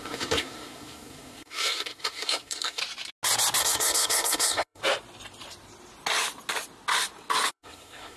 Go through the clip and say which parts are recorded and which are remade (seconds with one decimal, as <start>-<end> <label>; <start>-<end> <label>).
0.0-2.8 remade; 2.8-3.6 recorded; 3.6-4.8 remade; 4.8-7.5 recorded; 7.5-8.2 remade